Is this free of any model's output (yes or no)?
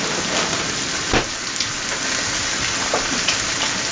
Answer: yes